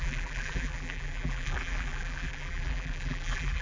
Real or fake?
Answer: fake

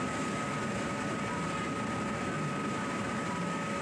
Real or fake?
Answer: fake